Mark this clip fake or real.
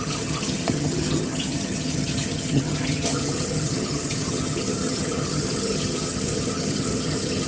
fake